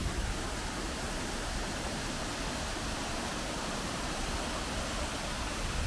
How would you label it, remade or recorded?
recorded